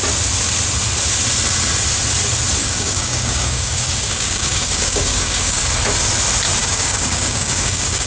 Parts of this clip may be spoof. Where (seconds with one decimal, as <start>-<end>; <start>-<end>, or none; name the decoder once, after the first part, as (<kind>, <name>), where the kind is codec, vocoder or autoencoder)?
2.6-5.6 (codec, DAC); 6.6-8.1